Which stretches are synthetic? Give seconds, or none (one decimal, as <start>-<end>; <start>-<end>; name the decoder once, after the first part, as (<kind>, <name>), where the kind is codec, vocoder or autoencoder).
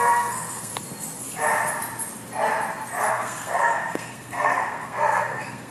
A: 0.0-0.7 (codec, SNAC); 3.1-5.7